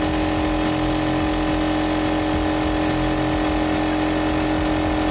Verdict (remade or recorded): recorded